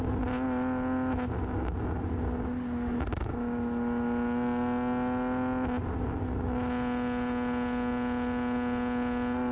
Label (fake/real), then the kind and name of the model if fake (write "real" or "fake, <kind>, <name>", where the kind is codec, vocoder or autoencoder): real